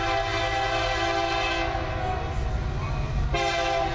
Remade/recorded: recorded